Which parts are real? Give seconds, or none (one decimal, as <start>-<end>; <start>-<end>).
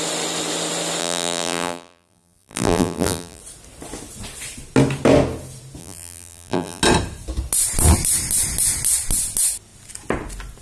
0.0-1.0; 3.4-5.8; 6.8-10.6